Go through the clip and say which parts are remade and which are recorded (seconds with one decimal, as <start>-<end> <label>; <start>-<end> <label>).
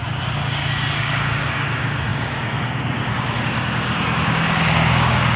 0.0-1.0 recorded; 1.0-5.4 remade